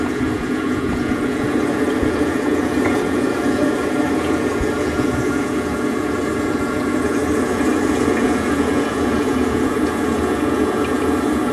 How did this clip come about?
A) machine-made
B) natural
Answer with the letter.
A